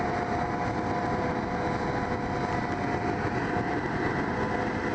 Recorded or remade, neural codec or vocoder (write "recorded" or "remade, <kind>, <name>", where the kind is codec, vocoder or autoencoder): recorded